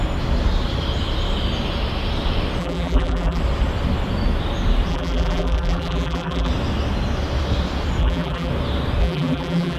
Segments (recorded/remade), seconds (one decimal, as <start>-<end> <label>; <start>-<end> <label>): 0.0-2.6 recorded; 2.6-3.4 remade; 3.4-4.9 recorded; 4.9-6.5 remade; 6.5-8.0 recorded; 8.0-8.5 remade; 8.5-9.0 recorded; 9.0-9.8 remade